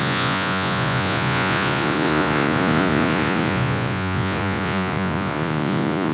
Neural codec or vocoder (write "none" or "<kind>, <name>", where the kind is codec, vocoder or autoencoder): vocoder, Vocos